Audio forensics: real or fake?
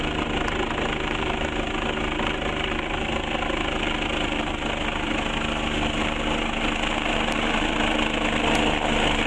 real